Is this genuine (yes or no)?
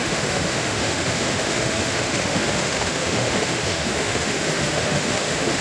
no